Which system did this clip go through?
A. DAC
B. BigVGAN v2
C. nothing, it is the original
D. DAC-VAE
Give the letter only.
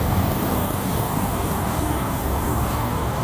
A